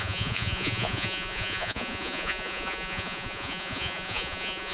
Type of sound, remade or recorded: remade